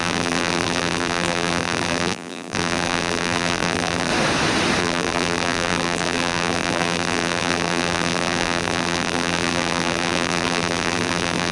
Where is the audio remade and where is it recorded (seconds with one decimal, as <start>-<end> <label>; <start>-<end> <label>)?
0.0-4.1 remade; 4.1-4.8 recorded; 4.8-11.5 remade